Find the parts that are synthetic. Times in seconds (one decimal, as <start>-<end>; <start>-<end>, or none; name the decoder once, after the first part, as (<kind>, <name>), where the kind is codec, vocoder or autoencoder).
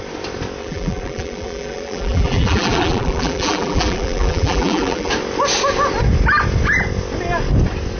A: 0.6-5.1 (vocoder, BigVGAN v2)